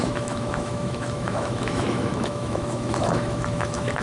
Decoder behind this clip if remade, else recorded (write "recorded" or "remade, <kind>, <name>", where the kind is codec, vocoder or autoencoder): remade, autoencoder, DAC-VAE